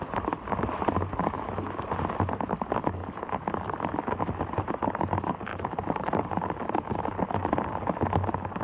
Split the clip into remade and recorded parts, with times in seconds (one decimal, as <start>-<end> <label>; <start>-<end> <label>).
0.0-5.5 recorded; 5.5-6.3 remade; 6.3-8.6 recorded